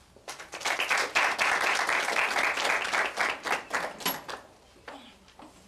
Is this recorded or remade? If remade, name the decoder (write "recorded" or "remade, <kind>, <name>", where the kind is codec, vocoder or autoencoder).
recorded